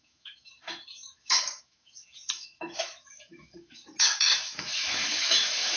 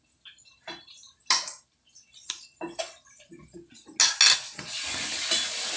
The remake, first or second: first